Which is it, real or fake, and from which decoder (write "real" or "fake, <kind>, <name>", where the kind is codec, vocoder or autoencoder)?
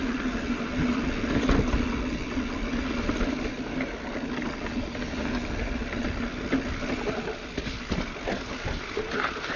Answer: real